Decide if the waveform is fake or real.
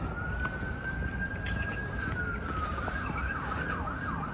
real